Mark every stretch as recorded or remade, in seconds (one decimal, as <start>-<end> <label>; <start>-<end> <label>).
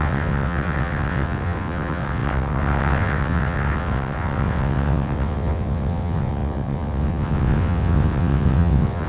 0.0-9.1 remade